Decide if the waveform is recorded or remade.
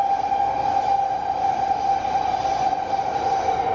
recorded